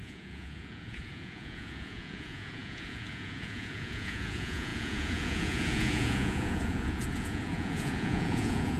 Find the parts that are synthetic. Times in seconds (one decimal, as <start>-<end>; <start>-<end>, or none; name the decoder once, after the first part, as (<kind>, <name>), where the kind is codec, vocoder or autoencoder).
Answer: 0.0-8.8 (vocoder, Vocos)